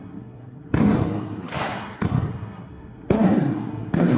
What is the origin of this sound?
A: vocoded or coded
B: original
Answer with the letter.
A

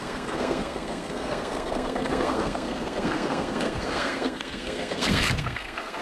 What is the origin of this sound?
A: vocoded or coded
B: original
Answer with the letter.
A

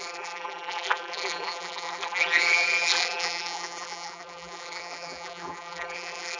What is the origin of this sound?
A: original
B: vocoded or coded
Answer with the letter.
B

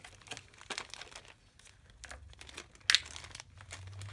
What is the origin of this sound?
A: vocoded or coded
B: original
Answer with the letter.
B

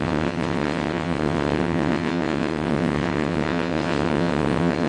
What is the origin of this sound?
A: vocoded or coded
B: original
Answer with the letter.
A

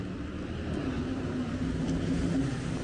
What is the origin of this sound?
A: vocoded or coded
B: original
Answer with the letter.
B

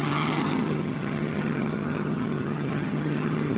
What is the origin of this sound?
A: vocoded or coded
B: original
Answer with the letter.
A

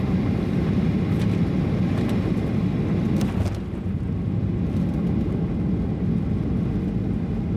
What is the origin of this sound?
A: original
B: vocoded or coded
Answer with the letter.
A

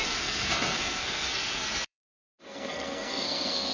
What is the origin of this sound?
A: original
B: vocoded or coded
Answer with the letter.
B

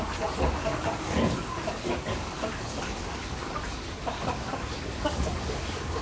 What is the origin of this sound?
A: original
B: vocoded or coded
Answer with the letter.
B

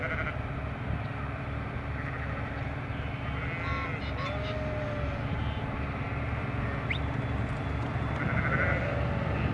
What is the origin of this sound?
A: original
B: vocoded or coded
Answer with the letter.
A